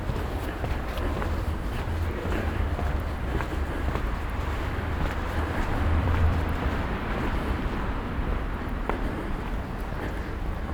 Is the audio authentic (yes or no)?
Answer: no